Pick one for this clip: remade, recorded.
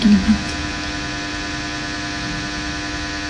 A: recorded